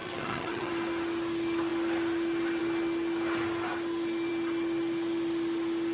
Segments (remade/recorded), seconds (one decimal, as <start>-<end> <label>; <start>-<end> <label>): 0.0-0.7 remade; 0.7-5.9 recorded